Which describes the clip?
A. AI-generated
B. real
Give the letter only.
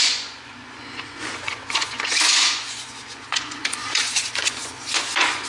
A